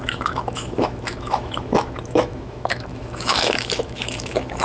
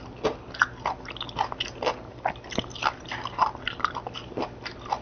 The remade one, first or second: first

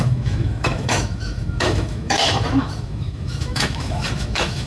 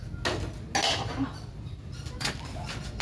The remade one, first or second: first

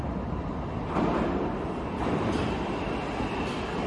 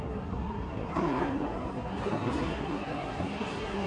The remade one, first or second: second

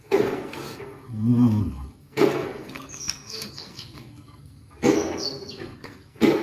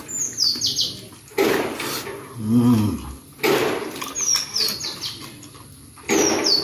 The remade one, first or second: first